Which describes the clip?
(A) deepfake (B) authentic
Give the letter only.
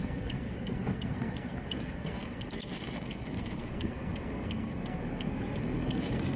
A